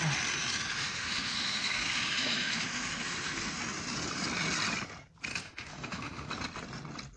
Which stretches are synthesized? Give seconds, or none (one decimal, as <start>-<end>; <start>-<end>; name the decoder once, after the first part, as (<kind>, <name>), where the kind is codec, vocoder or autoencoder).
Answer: 0.7-3.6 (autoencoder, DAC-VAE); 5.3-6.3